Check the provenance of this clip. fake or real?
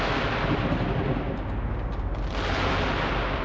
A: real